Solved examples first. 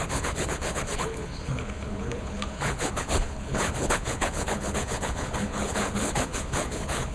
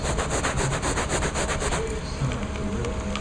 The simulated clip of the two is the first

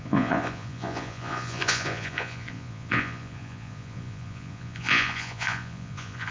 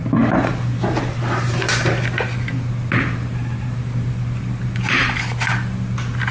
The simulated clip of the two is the first